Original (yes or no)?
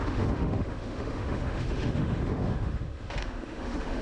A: no